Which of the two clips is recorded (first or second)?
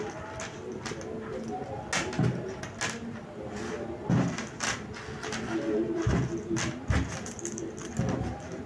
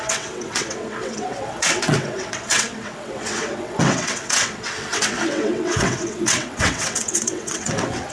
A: first